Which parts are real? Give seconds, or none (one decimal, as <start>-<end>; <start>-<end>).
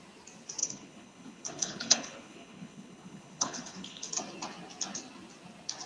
0.0-0.6; 4.1-5.9